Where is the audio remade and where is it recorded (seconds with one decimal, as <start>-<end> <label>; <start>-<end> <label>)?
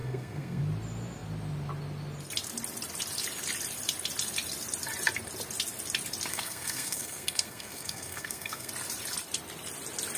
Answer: 0.0-0.6 remade; 0.6-6.3 recorded; 6.3-8.7 remade; 8.7-10.2 recorded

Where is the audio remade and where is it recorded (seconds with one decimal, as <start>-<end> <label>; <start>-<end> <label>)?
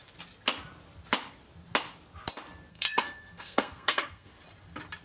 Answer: 0.0-2.7 recorded; 2.7-4.3 remade; 4.3-5.0 recorded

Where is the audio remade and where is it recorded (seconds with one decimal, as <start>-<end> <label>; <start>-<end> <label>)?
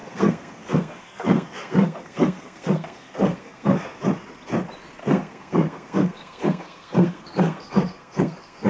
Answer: 0.0-4.0 remade; 4.0-5.0 recorded; 5.0-8.7 remade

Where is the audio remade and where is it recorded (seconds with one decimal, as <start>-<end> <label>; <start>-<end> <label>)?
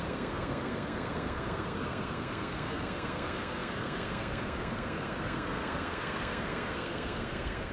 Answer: 0.0-7.7 remade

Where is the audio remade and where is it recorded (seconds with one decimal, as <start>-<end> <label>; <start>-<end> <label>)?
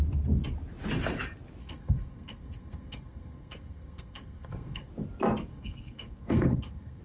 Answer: 0.0-1.6 recorded; 1.6-4.9 remade; 4.9-5.5 recorded; 5.5-7.0 remade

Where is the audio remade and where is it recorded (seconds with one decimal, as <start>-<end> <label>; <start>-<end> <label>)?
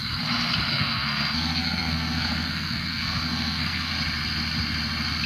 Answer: 0.0-0.7 recorded; 0.7-3.9 remade; 3.9-5.3 recorded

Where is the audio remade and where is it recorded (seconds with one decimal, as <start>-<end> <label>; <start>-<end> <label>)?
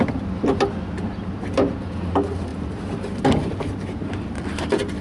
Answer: 0.0-5.0 recorded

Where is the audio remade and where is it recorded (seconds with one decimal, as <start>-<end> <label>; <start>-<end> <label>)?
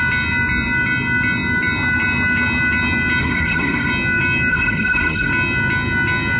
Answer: 0.0-3.2 recorded; 3.2-3.9 remade; 3.9-4.5 recorded; 4.5-5.3 remade; 5.3-6.4 recorded